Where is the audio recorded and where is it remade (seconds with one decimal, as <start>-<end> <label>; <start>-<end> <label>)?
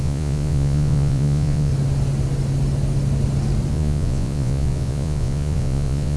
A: 0.0-1.7 remade; 1.7-3.7 recorded; 3.7-6.2 remade